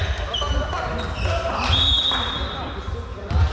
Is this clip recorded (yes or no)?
yes